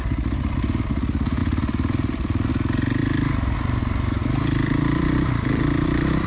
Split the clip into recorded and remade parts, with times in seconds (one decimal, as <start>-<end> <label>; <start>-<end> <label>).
0.0-1.4 recorded; 1.4-2.5 remade; 2.5-3.0 recorded; 3.0-3.8 remade; 3.8-4.2 recorded; 4.2-6.3 remade